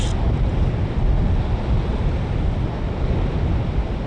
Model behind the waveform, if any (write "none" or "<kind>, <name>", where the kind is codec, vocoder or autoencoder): none